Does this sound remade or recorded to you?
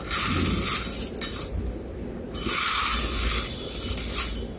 recorded